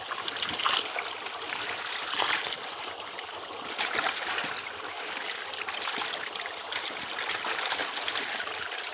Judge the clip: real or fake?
real